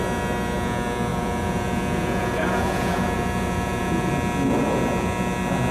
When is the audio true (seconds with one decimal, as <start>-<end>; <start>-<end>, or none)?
0.0-1.1; 4.1-5.7